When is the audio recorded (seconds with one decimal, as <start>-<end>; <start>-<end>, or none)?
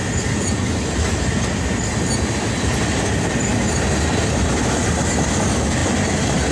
0.0-6.5